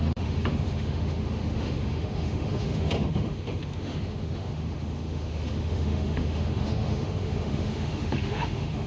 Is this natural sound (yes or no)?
no